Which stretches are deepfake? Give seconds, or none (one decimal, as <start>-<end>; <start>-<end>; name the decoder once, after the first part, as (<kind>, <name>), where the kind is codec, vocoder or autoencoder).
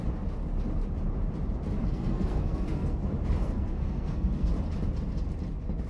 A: 1.8-3.0 (codec, SNAC); 3.4-4.5